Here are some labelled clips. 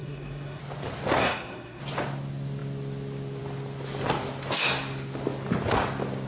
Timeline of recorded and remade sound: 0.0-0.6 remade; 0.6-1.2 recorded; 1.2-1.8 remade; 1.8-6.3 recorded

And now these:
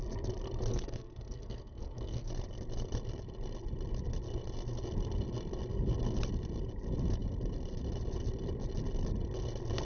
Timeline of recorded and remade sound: 0.0-0.7 recorded; 0.7-2.3 remade; 2.3-9.8 recorded

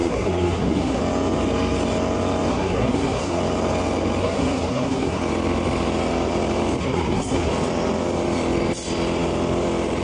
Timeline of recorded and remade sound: 0.0-1.0 remade; 1.0-2.5 recorded; 2.5-3.4 remade; 3.4-4.2 recorded; 4.2-5.2 remade; 5.2-6.8 recorded; 6.8-7.5 remade; 7.5-10.0 recorded